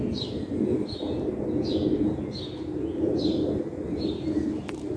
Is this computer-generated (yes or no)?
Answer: no